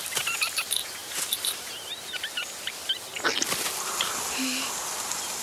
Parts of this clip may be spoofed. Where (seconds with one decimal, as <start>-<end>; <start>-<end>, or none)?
1.0-2.4